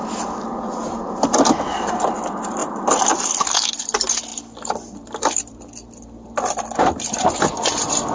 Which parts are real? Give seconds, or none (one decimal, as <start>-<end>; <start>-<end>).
0.0-2.6; 3.4-4.3